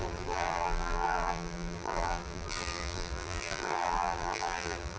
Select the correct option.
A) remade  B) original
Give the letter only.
A